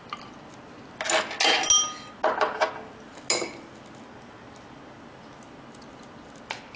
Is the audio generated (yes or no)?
no